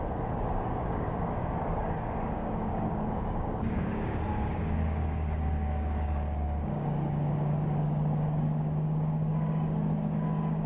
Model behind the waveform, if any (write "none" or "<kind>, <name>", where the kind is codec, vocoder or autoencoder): codec, DAC